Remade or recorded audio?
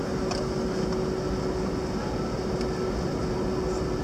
recorded